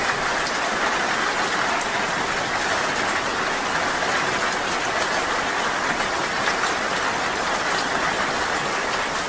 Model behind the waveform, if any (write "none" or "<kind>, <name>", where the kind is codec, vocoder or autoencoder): none